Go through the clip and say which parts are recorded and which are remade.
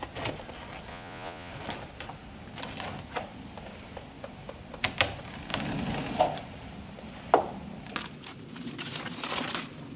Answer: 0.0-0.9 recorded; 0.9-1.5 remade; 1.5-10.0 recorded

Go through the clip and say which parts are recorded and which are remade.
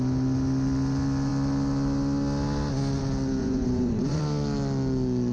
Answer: 0.0-3.4 recorded; 3.4-4.2 remade; 4.2-5.3 recorded